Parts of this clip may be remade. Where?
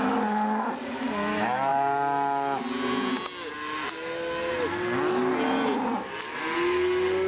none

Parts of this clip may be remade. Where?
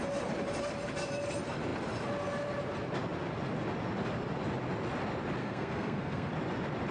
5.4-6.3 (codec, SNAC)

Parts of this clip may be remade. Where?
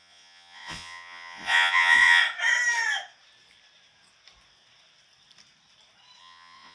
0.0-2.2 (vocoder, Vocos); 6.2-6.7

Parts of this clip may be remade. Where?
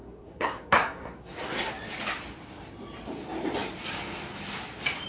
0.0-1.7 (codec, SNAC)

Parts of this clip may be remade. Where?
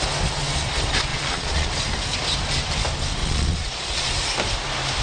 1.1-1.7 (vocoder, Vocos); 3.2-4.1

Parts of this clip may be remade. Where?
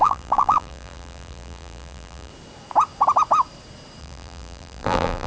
0.0-2.3 (vocoder, BigVGAN v2); 4.0-5.3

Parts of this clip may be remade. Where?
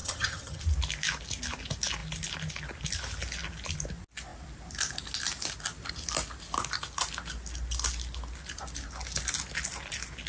0.0-0.6 (vocoder, HiFi-GAN)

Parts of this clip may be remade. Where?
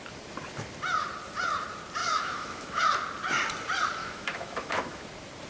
2.0-2.8 (autoencoder, DAC-VAE); 4.0-5.0